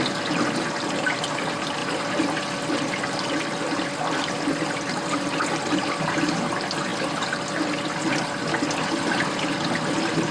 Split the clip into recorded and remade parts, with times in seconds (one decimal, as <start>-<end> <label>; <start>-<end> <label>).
0.0-1.8 recorded; 1.8-6.4 remade; 6.4-10.3 recorded